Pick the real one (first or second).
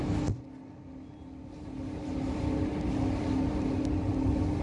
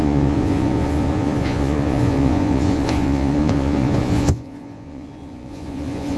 first